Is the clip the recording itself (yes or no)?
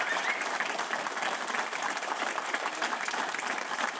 no